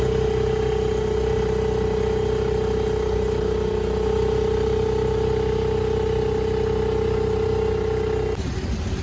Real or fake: real